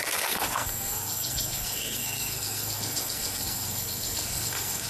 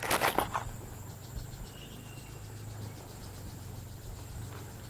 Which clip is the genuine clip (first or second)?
second